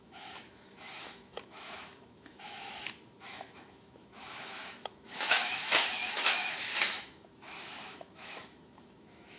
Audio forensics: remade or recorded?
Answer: remade